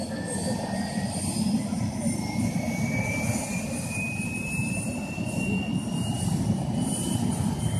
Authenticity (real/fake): fake